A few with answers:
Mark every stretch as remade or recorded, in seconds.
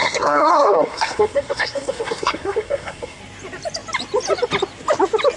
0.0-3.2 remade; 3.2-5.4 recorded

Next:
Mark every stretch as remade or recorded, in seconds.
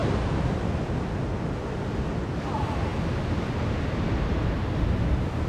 0.0-5.5 recorded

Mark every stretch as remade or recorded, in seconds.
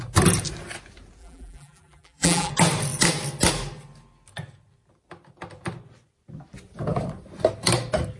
0.0-1.2 recorded; 1.2-2.5 remade; 2.5-8.2 recorded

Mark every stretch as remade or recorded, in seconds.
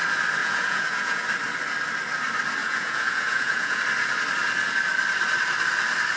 0.0-0.4 recorded; 0.4-1.2 remade; 1.2-2.6 recorded; 2.6-3.8 remade; 3.8-6.2 recorded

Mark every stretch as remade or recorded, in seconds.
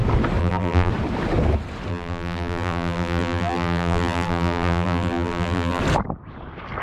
0.0-0.4 recorded; 0.4-0.9 remade; 0.9-1.9 recorded; 1.9-5.8 remade; 5.8-6.8 recorded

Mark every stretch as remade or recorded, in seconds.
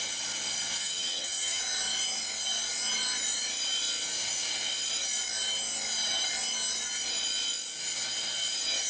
0.0-0.8 recorded; 0.8-1.6 remade; 1.6-8.9 recorded